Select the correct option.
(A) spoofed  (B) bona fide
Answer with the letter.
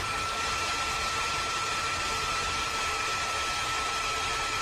A